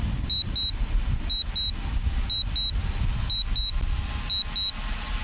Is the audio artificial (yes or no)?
no